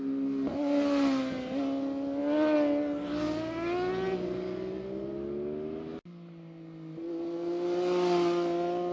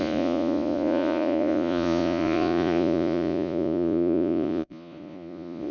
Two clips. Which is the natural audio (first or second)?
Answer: first